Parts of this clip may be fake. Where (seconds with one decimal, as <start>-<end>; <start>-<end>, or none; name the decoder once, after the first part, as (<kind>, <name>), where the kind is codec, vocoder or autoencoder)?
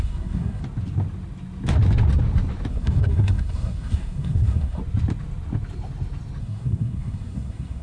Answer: 0.0-0.6 (codec, SNAC); 2.7-4.8; 6.4-7.8